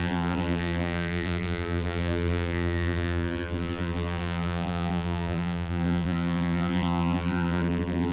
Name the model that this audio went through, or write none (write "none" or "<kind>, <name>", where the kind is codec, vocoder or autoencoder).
vocoder, BigVGAN v2